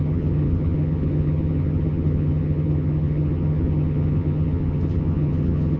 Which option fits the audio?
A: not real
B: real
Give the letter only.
A